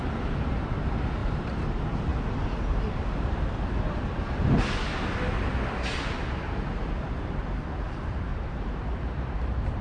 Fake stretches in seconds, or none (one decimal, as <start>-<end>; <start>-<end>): 1.2-1.7; 8.3-9.8